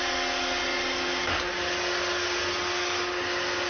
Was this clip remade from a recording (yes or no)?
no